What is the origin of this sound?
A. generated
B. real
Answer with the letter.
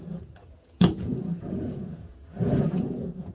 A